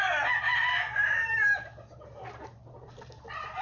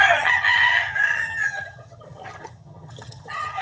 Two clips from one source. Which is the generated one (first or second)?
second